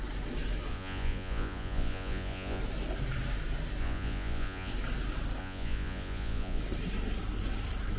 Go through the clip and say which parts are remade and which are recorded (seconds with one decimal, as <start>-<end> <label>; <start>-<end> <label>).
0.0-0.7 recorded; 0.7-2.6 remade; 2.6-3.8 recorded; 3.8-4.7 remade; 4.7-5.4 recorded; 5.4-6.6 remade; 6.6-8.0 recorded